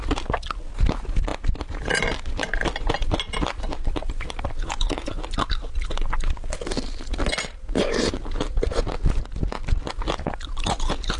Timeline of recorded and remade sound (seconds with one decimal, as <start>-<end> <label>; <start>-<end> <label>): 0.0-11.2 recorded